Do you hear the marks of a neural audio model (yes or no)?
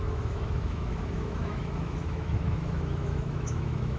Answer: yes